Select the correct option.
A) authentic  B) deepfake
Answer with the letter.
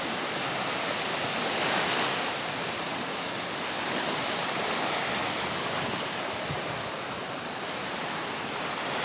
A